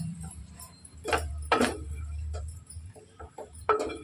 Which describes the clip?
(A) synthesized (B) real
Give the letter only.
A